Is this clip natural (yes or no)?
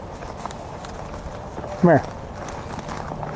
yes